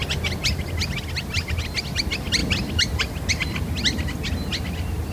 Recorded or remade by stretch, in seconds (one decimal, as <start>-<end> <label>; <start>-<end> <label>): 0.0-5.1 recorded